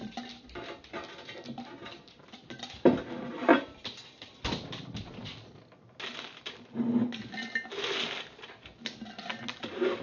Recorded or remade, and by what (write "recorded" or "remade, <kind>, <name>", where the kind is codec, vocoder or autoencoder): recorded